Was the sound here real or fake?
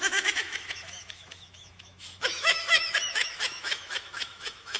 fake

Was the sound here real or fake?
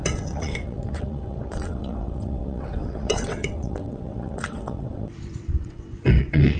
fake